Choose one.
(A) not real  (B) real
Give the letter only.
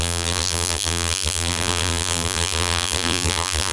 A